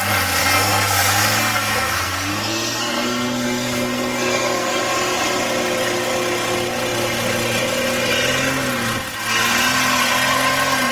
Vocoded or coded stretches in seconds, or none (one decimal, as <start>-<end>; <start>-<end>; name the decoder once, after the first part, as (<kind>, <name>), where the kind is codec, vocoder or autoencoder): 0.4-4.8 (codec, SNAC)